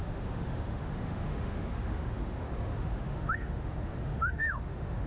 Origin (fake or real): fake